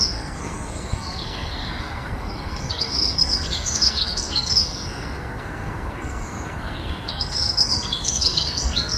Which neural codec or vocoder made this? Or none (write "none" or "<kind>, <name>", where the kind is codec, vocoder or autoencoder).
codec, SNAC